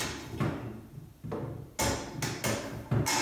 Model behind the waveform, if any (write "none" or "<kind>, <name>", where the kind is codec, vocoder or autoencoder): none